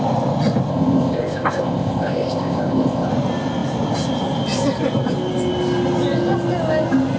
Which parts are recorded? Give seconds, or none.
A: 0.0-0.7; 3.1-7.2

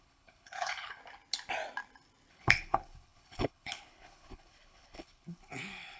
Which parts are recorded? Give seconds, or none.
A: 1.0-2.3